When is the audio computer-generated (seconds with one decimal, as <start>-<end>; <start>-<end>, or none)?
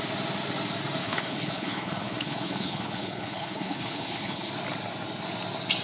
1.0-4.5